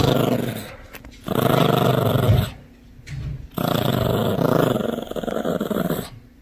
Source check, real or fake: real